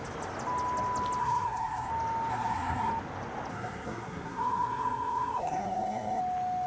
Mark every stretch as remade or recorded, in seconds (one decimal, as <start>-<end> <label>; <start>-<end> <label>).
0.0-1.2 recorded; 1.2-1.9 remade; 1.9-2.3 recorded; 2.3-2.9 remade; 2.9-3.5 recorded; 3.5-6.2 remade; 6.2-6.7 recorded